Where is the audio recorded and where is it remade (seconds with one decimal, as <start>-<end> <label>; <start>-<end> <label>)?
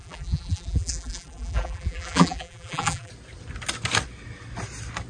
0.0-3.1 remade; 3.1-5.1 recorded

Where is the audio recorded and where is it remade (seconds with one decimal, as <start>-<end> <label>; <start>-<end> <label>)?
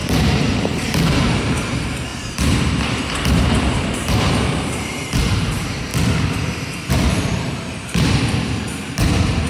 0.0-2.1 remade; 2.1-3.0 recorded; 3.0-5.9 remade; 5.9-6.9 recorded; 6.9-9.5 remade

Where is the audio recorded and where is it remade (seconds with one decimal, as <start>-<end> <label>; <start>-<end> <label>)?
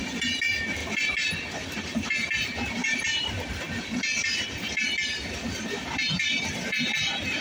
0.0-0.8 recorded; 0.8-1.8 remade; 1.8-2.8 recorded; 2.8-6.4 remade; 6.4-7.4 recorded